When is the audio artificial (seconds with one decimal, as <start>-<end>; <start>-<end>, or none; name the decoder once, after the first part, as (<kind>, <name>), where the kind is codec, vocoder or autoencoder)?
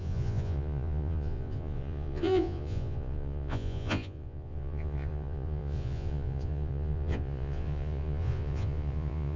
0.0-9.4 (vocoder, Vocos)